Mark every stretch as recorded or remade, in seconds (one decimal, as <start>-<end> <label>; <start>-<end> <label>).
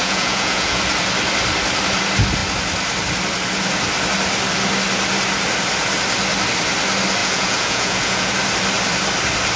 0.0-0.8 remade; 0.8-7.2 recorded; 7.2-8.3 remade; 8.3-9.6 recorded